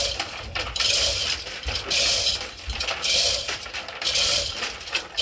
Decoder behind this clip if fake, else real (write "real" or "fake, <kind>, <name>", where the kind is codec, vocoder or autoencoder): fake, vocoder, BigVGAN v2